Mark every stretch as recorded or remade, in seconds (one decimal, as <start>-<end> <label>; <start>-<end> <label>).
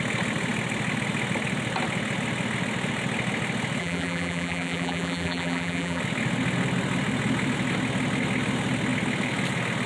0.0-3.8 recorded; 3.8-6.0 remade; 6.0-9.9 recorded